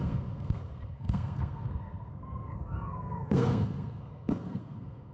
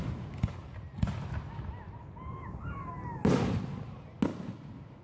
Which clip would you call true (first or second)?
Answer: second